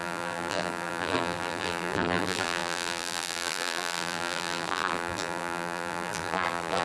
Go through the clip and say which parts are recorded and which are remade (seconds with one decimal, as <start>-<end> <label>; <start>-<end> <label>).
0.0-6.8 remade